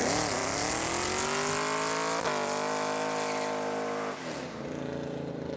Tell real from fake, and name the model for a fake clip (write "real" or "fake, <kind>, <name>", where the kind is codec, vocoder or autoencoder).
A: real